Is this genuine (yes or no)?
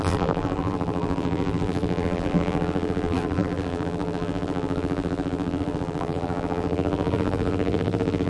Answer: no